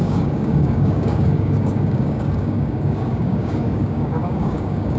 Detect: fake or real fake